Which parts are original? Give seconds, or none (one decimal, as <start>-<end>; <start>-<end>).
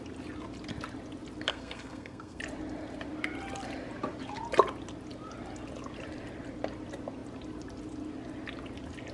0.0-1.5; 2.4-9.1